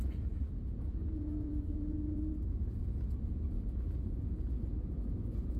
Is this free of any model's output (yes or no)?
no